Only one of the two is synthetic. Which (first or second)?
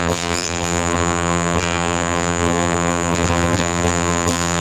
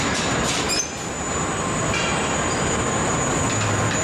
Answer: first